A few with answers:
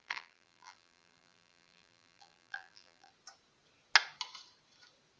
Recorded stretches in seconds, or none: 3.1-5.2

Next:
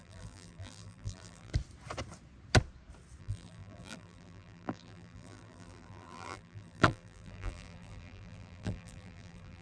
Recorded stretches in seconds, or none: 1.5-3.2

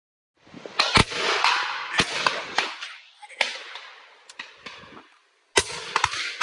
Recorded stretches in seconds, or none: 0.0-1.0; 4.8-6.4

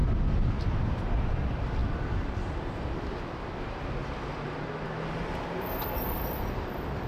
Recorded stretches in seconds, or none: 0.0-0.6; 4.0-5.4

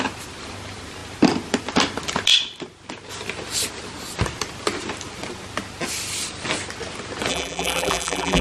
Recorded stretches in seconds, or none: 0.0-7.3